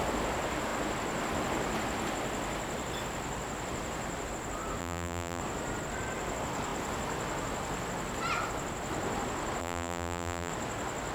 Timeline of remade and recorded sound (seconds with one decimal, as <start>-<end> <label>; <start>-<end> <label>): 0.0-4.8 recorded; 4.8-5.4 remade; 5.4-9.6 recorded; 9.6-10.5 remade; 10.5-11.1 recorded